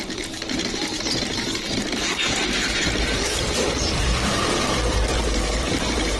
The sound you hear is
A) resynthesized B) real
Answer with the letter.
A